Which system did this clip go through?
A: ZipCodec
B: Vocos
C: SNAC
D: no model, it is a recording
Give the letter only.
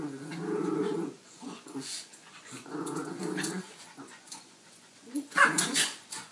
B